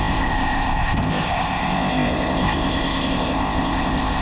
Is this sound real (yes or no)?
no